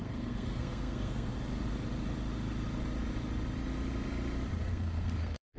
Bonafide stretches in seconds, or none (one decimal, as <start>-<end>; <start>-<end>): 1.3-4.7